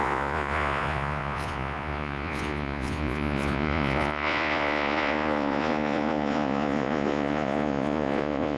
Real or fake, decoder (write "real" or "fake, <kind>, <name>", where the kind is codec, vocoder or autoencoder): fake, vocoder, Vocos